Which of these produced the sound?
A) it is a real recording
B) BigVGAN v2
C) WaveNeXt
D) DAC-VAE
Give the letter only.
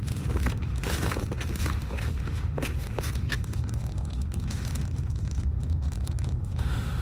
D